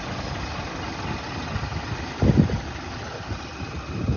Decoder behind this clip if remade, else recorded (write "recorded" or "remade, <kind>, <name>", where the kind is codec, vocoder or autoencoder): recorded